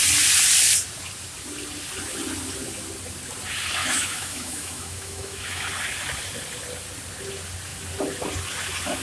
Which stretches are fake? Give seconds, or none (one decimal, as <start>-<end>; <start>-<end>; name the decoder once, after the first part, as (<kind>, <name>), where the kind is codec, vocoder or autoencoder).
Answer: 3.8-5.7 (autoencoder, DAC-VAE)